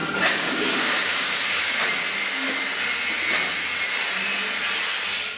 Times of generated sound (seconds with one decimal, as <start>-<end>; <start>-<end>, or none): 0.0-1.6

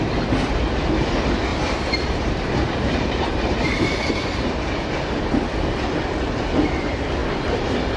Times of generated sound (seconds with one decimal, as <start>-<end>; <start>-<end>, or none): 1.5-5.3

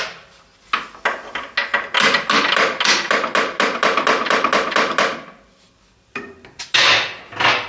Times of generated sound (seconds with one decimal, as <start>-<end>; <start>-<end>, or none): none

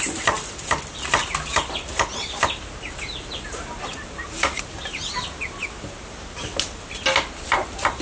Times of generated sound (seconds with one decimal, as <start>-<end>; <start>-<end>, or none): none

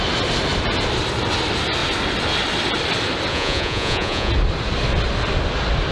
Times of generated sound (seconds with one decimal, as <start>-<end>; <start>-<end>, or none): 3.3-4.3

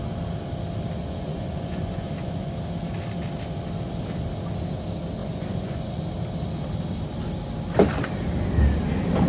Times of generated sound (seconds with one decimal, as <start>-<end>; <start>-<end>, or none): 1.0-2.5; 5.2-6.0